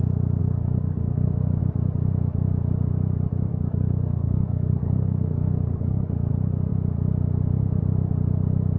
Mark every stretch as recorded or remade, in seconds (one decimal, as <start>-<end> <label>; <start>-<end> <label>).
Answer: 0.0-0.4 recorded; 0.4-1.6 remade; 1.6-3.5 recorded; 3.5-6.3 remade; 6.3-8.8 recorded